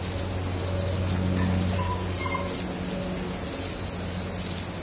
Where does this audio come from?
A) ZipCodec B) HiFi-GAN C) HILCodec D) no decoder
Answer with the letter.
D